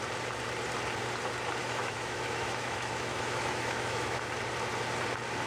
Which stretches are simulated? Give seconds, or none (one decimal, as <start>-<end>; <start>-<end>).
1.6-4.3